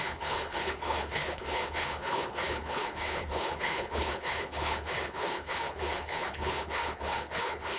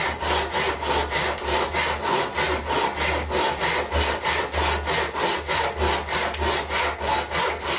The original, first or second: second